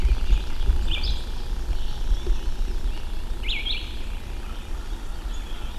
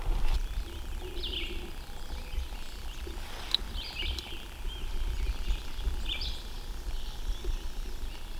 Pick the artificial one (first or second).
second